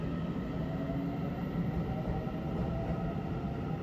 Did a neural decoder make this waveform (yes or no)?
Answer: no